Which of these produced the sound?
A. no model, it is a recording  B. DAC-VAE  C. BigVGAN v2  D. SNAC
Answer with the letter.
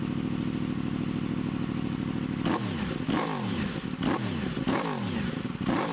A